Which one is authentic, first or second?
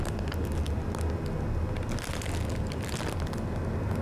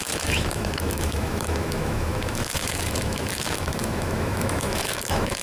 first